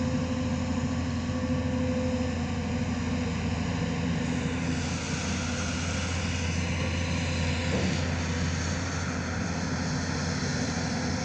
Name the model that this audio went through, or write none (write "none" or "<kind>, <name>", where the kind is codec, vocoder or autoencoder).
none